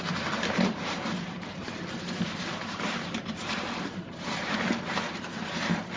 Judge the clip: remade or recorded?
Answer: remade